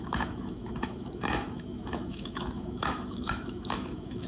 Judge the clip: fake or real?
fake